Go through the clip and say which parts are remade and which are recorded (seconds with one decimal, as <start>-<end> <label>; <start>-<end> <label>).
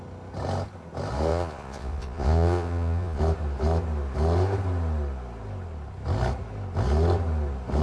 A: 0.0-1.3 recorded; 1.3-3.2 remade; 3.2-7.8 recorded